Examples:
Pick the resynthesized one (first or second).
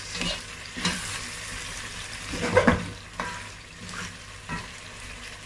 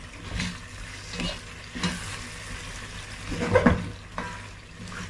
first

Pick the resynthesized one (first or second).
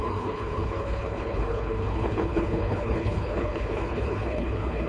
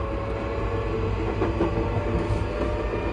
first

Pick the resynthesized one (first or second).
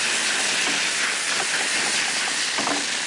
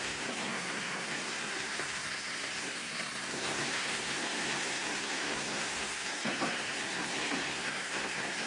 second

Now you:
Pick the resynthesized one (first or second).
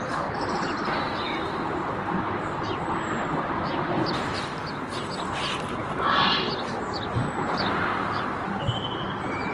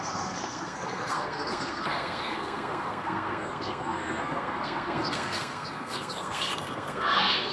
second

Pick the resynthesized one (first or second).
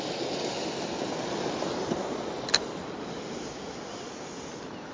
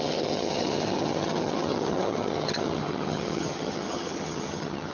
second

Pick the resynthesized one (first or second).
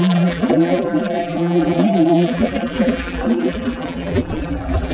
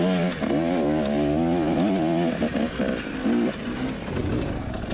first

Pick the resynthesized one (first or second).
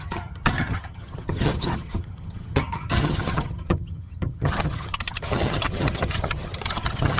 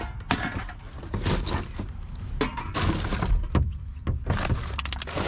first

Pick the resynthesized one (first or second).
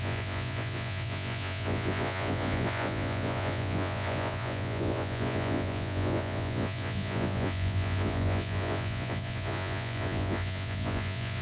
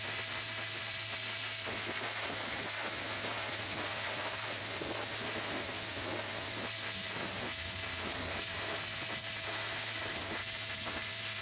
first